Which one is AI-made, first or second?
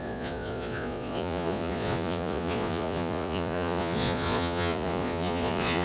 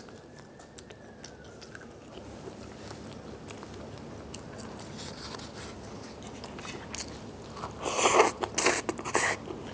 first